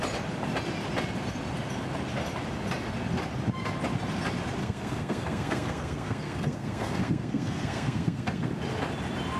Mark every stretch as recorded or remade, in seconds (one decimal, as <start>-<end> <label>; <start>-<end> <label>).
0.0-4.6 recorded; 4.6-8.5 remade; 8.5-9.4 recorded